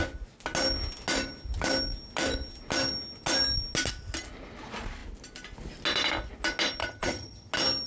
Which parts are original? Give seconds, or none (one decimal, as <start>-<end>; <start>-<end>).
0.0-6.8; 7.5-7.9

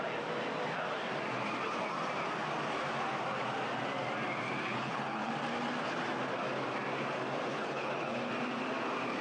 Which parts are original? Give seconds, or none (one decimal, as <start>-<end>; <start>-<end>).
0.0-4.7; 5.3-7.5; 8.3-9.2

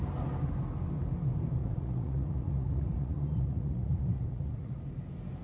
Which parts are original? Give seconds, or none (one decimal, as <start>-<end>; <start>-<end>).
0.0-1.6; 4.8-5.4

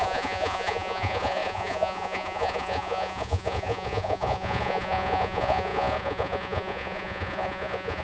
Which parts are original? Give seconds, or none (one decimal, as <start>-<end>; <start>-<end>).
none

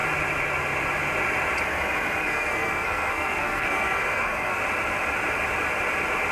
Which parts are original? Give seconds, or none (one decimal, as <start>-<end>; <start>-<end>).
0.0-2.2; 4.6-6.3

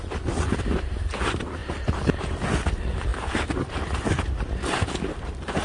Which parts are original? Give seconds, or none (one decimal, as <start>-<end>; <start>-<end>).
0.0-5.6

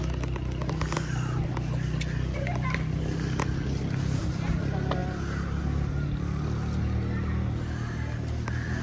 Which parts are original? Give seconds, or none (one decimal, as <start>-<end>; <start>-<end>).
0.0-8.8